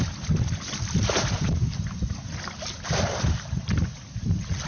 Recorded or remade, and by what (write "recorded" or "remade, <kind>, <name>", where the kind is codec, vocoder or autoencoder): remade, vocoder, BigVGAN v2